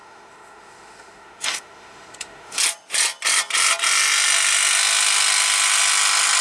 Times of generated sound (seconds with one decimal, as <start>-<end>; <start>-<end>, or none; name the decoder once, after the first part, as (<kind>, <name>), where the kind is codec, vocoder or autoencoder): 0.0-2.6 (autoencoder, DAC-VAE)